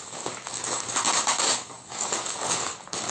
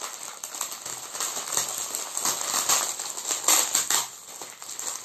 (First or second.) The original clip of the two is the second